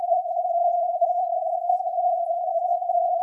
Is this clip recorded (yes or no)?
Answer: no